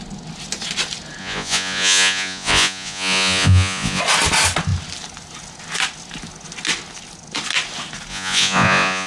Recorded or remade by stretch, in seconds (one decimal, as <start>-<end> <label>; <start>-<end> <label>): 0.0-1.2 recorded; 1.2-4.0 remade; 4.0-8.1 recorded; 8.1-9.1 remade